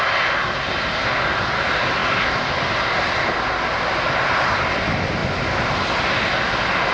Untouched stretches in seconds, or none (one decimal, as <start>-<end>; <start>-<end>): 0.0-6.9